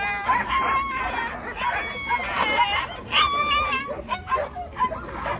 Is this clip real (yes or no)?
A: yes